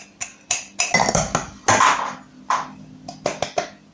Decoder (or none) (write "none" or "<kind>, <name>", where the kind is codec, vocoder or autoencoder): none